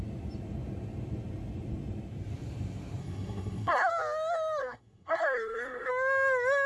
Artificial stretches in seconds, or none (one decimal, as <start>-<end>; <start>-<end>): 3.0-3.9; 4.6-5.9